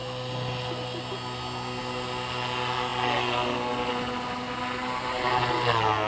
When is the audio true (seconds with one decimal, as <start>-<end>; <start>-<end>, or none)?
0.0-6.1